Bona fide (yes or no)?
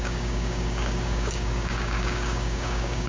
no